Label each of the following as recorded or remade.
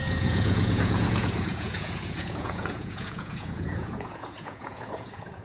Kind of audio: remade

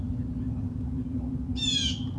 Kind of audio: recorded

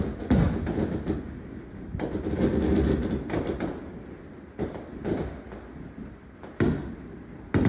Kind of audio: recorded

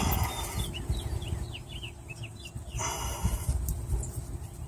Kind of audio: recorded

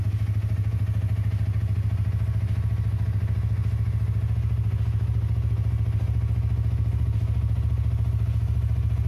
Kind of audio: recorded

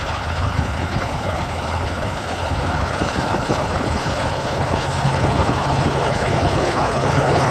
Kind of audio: remade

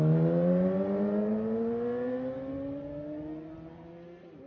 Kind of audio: recorded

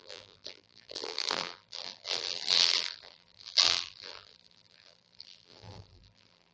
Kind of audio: remade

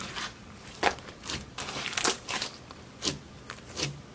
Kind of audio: recorded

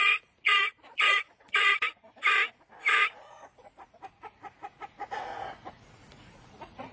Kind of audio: remade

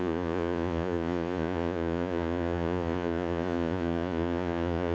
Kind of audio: remade